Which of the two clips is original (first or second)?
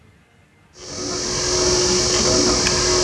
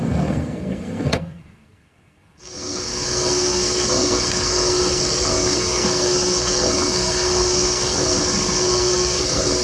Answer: first